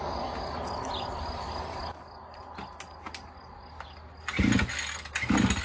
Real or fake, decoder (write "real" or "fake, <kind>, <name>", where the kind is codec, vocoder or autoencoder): real